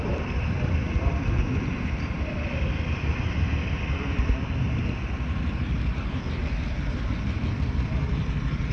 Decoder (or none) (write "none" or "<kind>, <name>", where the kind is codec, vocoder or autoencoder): vocoder, BigVGAN v2